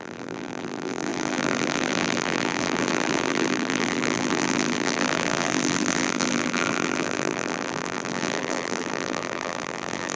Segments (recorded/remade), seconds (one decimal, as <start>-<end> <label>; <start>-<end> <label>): 0.0-10.2 remade